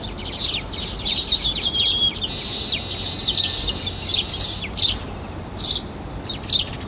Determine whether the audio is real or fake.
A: real